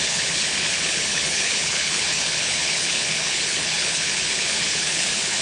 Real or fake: fake